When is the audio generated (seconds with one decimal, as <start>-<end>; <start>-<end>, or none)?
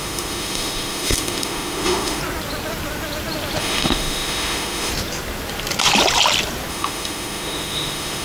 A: 0.0-2.2; 3.6-4.9; 6.7-8.2